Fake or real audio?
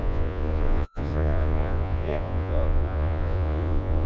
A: fake